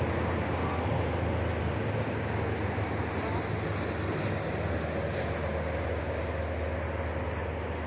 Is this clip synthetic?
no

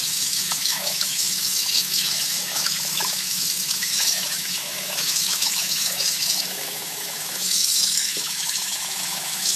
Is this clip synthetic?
yes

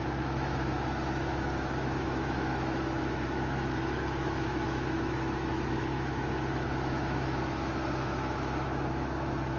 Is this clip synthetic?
yes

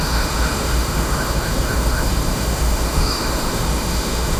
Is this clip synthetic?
yes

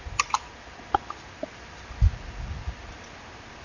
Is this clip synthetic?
no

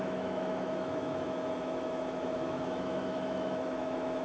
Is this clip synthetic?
yes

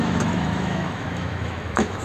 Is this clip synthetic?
yes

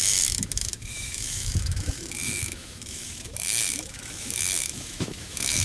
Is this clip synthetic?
yes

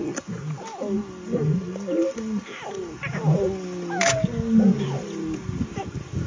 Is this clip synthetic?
no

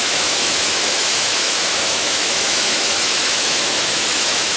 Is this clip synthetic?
yes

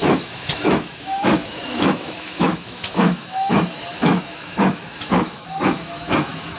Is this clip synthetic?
yes